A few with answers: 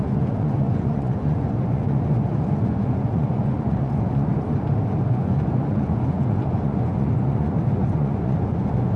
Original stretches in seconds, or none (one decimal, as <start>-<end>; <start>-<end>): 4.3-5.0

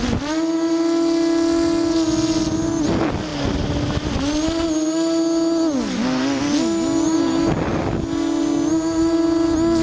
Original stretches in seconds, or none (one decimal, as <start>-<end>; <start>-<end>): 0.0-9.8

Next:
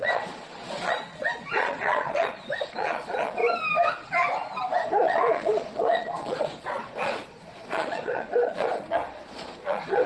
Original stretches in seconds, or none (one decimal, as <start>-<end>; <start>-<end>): 3.4-3.9; 4.3-5.0

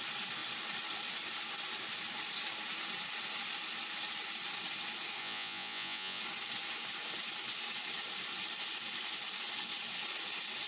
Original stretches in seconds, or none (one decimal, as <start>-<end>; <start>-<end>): 0.0-5.2; 6.2-10.7

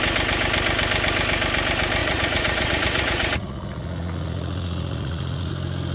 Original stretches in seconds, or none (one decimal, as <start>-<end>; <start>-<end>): 0.0-2.0; 5.5-5.9